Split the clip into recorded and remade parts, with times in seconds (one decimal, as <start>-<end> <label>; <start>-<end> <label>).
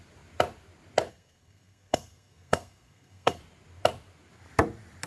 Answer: 0.0-1.1 recorded; 1.1-3.4 remade; 3.4-5.1 recorded